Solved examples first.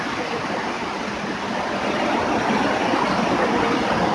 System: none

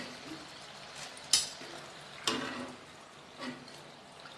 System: none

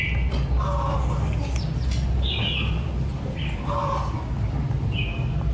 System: none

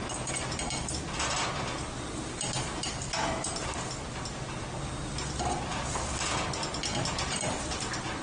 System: none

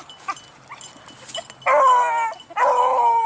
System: none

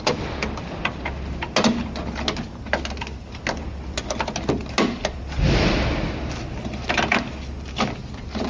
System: none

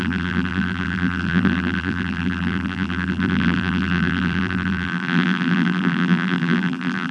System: vocoder, BigVGAN v2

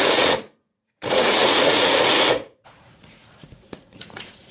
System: vocoder, Vocos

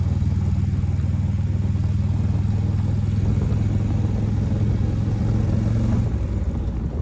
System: none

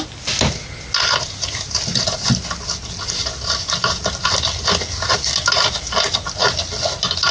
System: none